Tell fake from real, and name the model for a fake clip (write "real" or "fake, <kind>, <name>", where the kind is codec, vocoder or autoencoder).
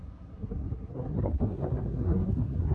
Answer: fake, codec, SNAC